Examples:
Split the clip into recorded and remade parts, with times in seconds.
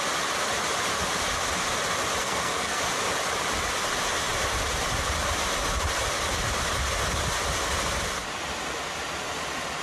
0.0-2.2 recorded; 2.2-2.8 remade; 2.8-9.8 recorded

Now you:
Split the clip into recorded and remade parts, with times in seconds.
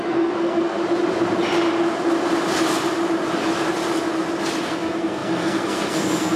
0.0-0.8 remade; 0.8-4.6 recorded; 4.6-6.4 remade